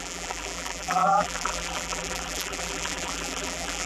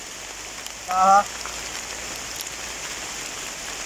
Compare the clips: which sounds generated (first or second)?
first